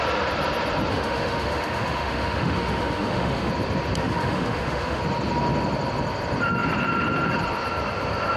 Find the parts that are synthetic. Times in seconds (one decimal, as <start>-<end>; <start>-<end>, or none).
0.9-3.5; 4.0-5.0

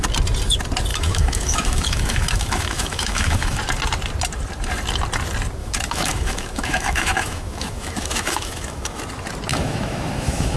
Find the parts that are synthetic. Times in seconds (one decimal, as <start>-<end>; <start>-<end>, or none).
0.9-3.6; 5.6-9.0; 9.5-10.6

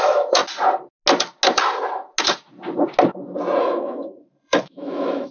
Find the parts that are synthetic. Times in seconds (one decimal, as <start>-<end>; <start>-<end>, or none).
0.0-0.4; 3.6-5.3

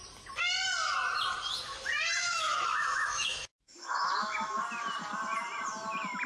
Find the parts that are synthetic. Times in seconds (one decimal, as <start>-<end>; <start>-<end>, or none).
2.2-4.6

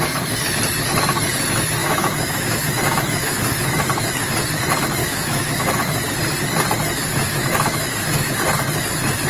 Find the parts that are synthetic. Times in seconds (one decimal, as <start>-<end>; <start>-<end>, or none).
1.8-3.8; 5.0-6.0; 7.1-8.3

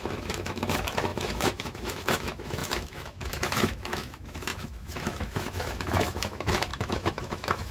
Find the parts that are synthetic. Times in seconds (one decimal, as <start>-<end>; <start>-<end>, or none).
0.0-7.7